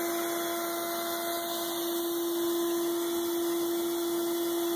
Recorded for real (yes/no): yes